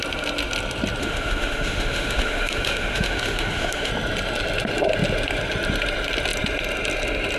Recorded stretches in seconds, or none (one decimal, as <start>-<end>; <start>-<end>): 0.0-1.0; 3.9-7.4